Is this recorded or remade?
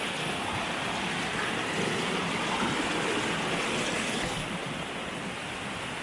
recorded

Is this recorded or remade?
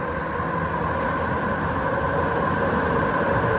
recorded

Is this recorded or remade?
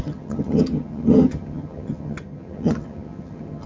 remade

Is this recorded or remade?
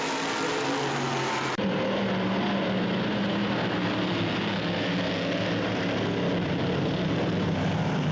recorded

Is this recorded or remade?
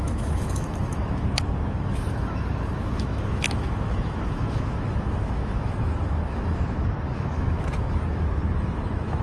remade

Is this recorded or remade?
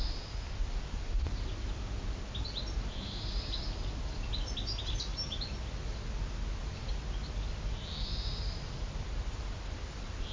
recorded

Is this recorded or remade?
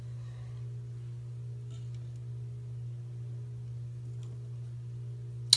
recorded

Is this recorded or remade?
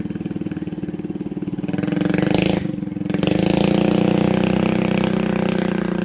recorded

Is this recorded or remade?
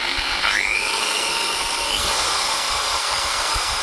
remade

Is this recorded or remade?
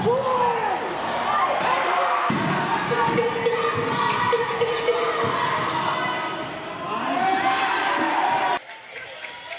recorded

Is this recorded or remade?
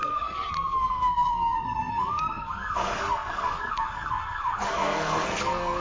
remade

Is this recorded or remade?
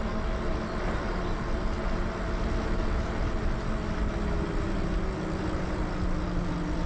recorded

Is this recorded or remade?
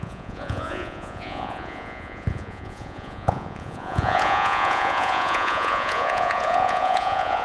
remade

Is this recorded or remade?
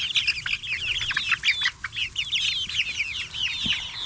recorded